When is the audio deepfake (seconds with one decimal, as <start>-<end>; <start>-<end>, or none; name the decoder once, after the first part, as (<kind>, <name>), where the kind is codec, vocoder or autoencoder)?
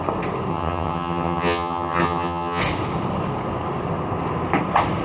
0.5-2.6 (vocoder, HiFi-GAN)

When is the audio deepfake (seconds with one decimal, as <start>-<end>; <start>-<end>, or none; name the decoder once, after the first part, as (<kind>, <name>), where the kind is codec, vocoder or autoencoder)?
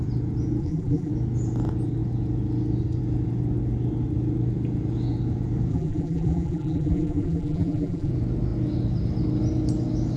0.6-1.1 (vocoder, BigVGAN v2); 5.7-8.1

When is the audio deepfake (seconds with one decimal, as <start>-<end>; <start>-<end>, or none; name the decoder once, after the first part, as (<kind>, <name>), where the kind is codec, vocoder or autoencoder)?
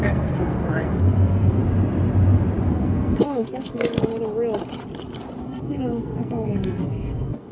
0.0-1.6 (codec, SNAC); 2.7-4.1; 5.4-7.5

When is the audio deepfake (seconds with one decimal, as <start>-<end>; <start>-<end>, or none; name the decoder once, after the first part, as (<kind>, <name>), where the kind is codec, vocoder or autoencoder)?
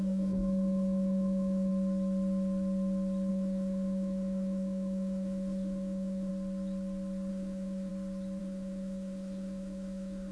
0.0-1.7 (autoencoder, DAC-VAE); 3.3-6.3; 7.3-7.9; 8.4-10.3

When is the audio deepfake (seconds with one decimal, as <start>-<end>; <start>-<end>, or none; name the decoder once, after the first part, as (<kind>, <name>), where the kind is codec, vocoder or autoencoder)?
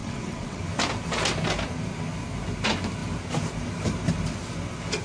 0.0-0.6 (vocoder, WaveNeXt)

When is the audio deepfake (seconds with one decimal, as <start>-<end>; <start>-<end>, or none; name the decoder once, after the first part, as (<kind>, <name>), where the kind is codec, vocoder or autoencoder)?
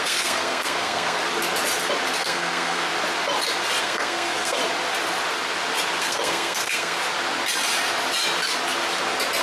0.0-1.2 (codec, SNAC); 2.2-2.9; 3.8-4.6; 6.0-7.0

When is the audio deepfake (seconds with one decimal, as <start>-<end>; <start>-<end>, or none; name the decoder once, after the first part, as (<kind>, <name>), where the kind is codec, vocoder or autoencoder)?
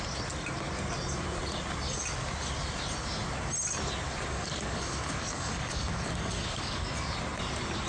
4.3-6.9 (codec, DAC)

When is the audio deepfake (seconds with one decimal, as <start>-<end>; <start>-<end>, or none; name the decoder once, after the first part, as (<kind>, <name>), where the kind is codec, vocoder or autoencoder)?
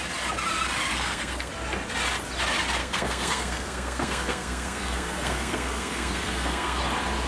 0.9-1.5 (codec, SNAC); 2.8-6.8